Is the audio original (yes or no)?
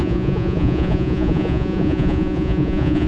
no